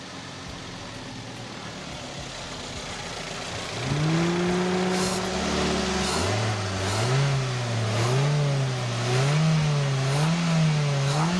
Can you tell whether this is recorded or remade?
recorded